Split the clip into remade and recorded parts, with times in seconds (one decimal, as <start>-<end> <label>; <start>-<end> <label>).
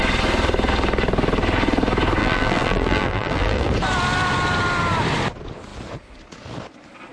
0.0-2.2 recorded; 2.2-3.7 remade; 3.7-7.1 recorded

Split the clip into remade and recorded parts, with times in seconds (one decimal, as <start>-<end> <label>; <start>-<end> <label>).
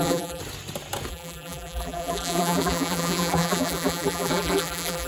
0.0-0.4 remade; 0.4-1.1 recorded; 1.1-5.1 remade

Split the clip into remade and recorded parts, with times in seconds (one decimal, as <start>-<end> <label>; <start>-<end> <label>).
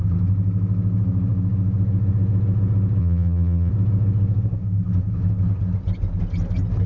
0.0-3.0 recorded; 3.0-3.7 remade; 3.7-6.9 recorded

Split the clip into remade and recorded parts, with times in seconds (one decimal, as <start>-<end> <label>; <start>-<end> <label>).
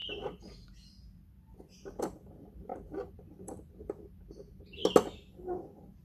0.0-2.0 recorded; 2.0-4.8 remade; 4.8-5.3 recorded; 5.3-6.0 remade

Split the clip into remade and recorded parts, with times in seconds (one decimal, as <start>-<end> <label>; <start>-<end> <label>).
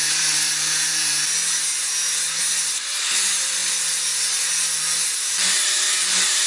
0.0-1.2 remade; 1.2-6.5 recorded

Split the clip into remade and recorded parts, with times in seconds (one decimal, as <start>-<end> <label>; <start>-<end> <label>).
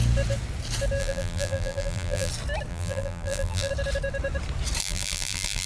0.0-1.0 recorded; 1.0-2.3 remade; 2.3-2.7 recorded; 2.7-3.7 remade; 3.7-4.8 recorded; 4.8-5.7 remade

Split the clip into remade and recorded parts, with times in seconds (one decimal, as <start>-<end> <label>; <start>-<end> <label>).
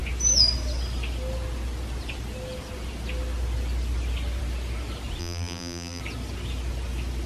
0.0-5.2 recorded; 5.2-6.0 remade; 6.0-7.3 recorded